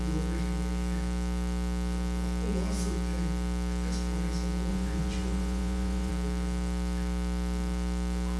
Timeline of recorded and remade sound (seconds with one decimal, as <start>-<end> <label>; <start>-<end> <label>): 0.0-4.7 recorded; 4.7-6.1 remade; 6.1-8.4 recorded